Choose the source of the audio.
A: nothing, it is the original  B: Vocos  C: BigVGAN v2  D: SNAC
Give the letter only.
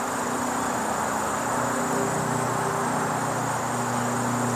A